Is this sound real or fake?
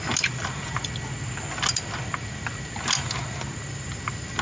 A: real